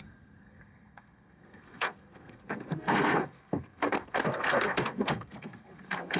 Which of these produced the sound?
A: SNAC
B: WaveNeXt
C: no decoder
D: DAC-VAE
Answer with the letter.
A